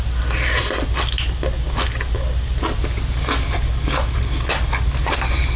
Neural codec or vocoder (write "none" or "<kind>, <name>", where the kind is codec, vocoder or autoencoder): none